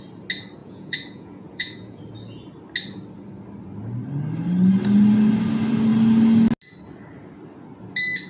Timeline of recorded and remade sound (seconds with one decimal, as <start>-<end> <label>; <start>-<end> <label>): 0.0-0.6 recorded; 0.6-2.0 remade; 2.0-8.3 recorded